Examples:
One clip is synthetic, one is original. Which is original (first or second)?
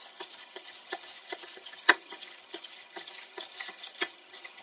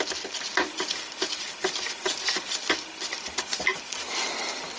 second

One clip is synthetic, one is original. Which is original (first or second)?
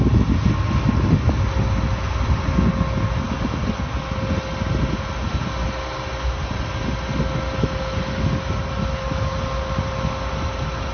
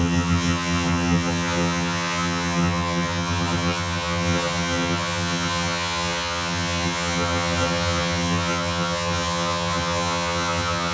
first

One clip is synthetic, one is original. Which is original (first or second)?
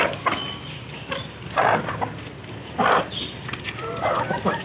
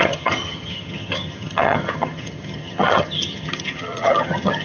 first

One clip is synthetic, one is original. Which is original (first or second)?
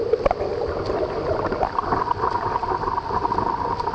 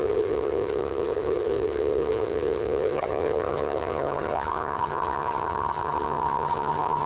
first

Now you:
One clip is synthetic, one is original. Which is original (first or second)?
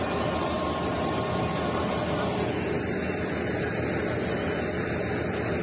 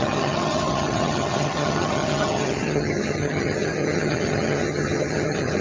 first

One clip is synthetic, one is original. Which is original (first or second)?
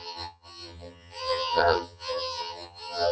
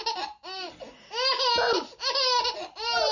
second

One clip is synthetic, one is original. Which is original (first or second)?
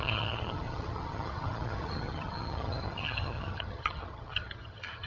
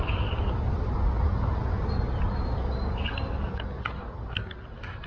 second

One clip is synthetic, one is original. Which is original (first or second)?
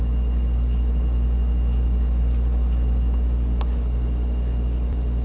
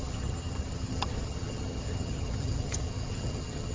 first